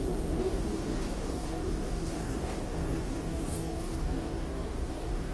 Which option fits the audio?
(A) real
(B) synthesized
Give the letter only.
B